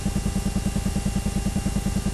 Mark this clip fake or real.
real